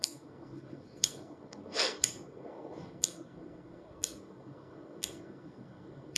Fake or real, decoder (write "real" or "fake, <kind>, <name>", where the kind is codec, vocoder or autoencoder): fake, codec, SNAC